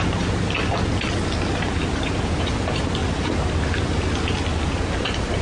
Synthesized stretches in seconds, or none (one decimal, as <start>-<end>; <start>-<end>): 3.0-4.0

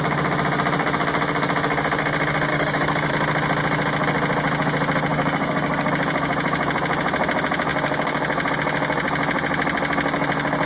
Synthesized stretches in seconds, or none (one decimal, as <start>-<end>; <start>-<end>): 2.5-3.1; 5.1-5.9